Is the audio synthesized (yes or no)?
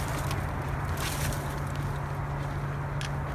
no